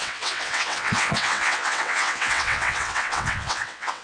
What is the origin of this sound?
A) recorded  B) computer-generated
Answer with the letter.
B